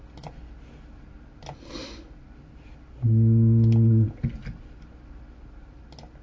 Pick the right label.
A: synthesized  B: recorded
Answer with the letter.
B